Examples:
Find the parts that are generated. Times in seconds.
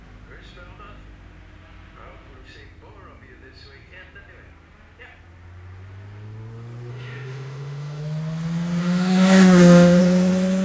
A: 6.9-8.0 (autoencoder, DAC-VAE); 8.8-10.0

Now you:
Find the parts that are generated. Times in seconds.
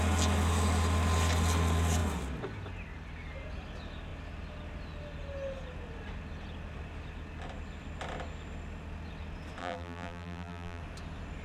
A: 9.6-10.8 (vocoder, BigVGAN v2)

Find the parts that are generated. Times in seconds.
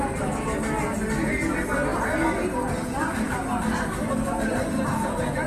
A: none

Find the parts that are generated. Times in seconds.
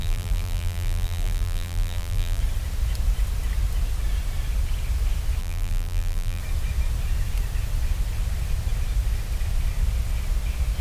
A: 0.0-2.4 (vocoder, BigVGAN v2); 5.4-6.4